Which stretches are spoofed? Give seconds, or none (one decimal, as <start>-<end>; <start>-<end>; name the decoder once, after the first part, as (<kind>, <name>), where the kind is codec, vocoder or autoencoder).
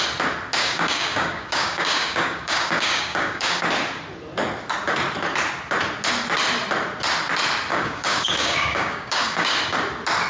0.6-3.6 (codec, DAC); 7.7-9.5